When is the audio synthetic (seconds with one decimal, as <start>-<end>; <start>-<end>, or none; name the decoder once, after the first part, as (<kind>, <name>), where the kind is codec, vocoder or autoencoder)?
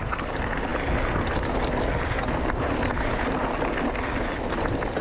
none